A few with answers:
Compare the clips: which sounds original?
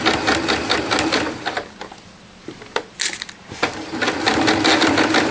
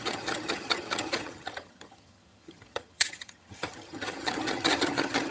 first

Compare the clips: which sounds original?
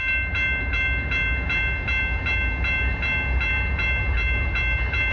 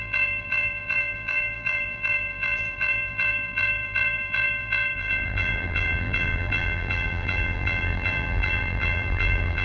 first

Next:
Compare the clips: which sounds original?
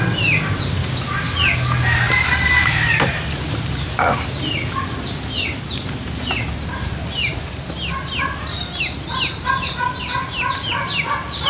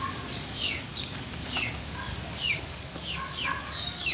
first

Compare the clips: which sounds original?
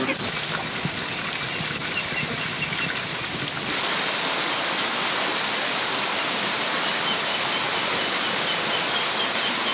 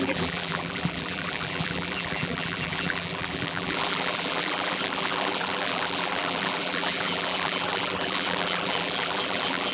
first